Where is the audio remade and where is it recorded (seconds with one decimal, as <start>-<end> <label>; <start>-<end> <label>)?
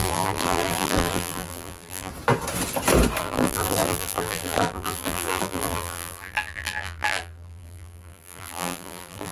0.0-2.1 remade; 2.1-3.2 recorded; 3.2-9.3 remade